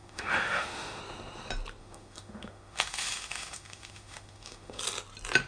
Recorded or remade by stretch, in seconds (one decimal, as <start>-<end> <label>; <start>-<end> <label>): 0.0-1.0 remade; 1.0-1.8 recorded; 1.8-4.8 remade; 4.8-5.5 recorded